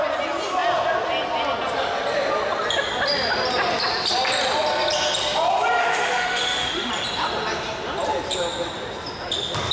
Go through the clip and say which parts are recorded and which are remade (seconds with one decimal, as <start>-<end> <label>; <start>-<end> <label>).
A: 0.0-5.8 recorded; 5.8-6.9 remade; 6.9-9.7 recorded